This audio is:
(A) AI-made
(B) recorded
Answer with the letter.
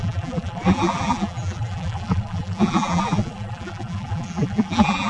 A